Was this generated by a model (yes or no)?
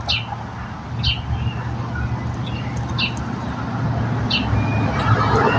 no